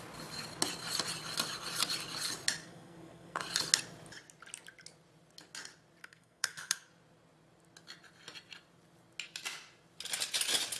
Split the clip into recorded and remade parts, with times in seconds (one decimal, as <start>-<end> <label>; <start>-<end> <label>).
0.0-2.6 recorded; 2.6-3.4 remade; 3.4-6.0 recorded; 6.0-6.9 remade; 6.9-10.8 recorded